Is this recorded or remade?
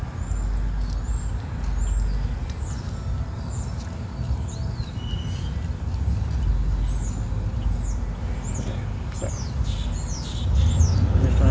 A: recorded